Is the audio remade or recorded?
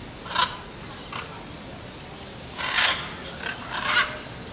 recorded